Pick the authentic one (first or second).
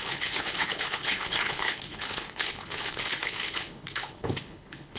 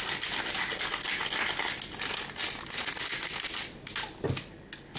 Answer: second